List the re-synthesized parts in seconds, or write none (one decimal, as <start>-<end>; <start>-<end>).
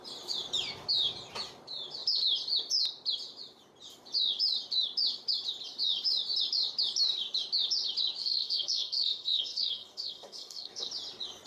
8.2-10.9